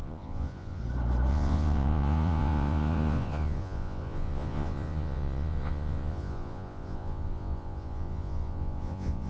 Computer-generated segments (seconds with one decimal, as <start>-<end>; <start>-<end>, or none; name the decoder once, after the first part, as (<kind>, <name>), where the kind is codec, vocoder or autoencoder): 0.0-0.8 (vocoder, Vocos); 1.3-9.3